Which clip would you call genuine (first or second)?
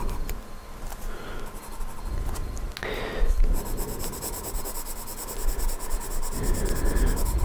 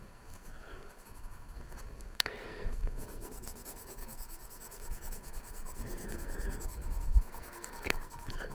first